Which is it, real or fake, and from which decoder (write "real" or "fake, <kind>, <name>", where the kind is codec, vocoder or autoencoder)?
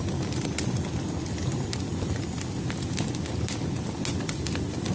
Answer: real